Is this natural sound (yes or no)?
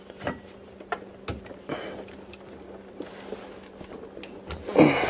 yes